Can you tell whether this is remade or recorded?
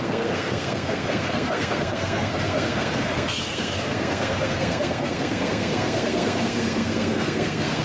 remade